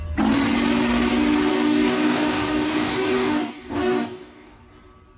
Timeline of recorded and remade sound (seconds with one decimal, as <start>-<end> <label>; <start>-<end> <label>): 0.0-1.5 recorded; 1.5-4.6 remade; 4.6-5.2 recorded